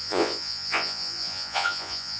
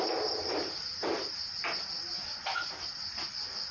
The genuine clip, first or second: second